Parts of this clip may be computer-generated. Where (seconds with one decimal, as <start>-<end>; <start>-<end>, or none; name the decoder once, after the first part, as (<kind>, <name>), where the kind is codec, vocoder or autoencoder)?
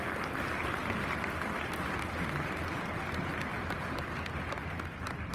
0.8-2.1 (vocoder, BigVGAN v2); 3.5-5.3